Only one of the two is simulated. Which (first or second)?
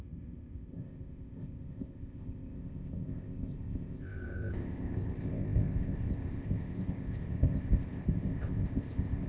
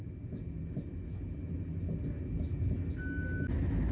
first